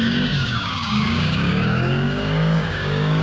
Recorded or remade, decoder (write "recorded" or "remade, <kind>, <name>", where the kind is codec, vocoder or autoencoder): remade, codec, DAC